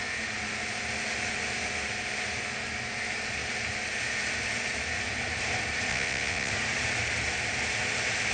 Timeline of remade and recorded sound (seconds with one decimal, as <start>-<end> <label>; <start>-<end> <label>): 0.0-5.9 recorded; 5.9-6.5 remade; 6.5-8.3 recorded